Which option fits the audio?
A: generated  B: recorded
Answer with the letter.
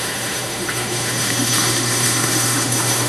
A